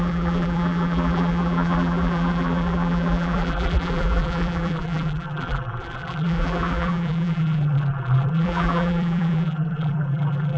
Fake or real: fake